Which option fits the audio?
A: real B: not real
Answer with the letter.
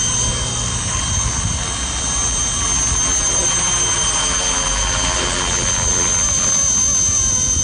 A